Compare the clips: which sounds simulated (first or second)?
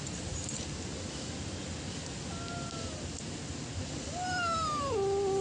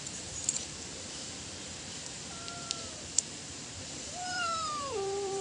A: second